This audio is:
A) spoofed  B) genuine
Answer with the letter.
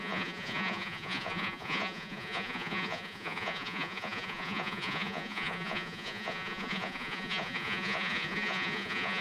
A